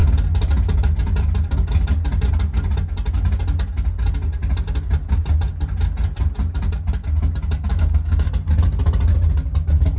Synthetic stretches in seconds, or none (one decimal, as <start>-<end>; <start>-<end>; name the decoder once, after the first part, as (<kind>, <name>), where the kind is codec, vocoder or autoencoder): 7.7-8.3 (codec, DAC)